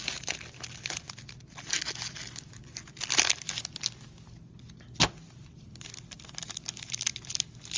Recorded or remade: recorded